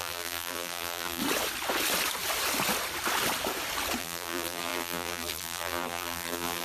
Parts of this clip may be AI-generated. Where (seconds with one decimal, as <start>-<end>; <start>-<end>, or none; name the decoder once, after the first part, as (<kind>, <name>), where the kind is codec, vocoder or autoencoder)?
0.0-1.2 (vocoder, BigVGAN v2); 4.0-6.6